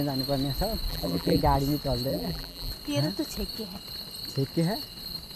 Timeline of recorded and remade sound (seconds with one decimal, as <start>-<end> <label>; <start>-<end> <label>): 0.0-0.9 recorded; 0.9-1.4 remade; 1.4-2.1 recorded; 2.1-2.7 remade; 2.7-5.4 recorded